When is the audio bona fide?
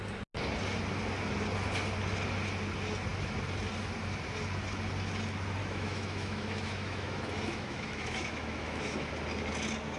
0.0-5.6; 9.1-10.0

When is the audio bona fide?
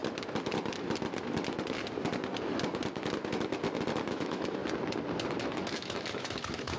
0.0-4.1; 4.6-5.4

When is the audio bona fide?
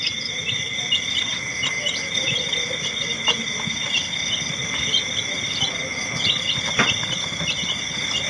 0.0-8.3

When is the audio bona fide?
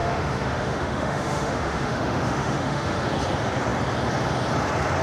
3.0-5.0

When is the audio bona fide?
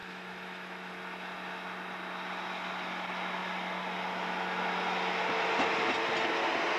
0.9-6.8